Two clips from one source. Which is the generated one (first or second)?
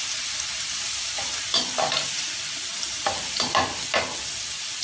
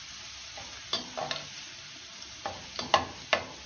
first